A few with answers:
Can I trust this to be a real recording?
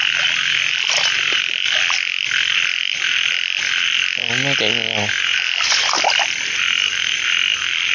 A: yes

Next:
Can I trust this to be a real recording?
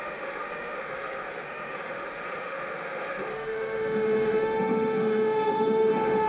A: no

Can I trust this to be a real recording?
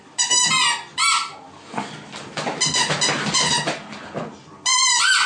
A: yes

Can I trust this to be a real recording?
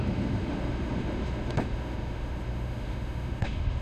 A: no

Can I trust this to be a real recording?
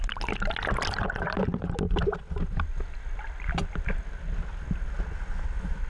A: yes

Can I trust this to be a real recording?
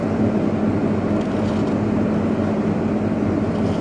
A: yes